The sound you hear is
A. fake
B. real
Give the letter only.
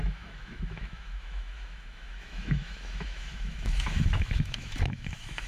A